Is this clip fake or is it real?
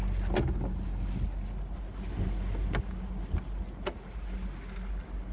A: real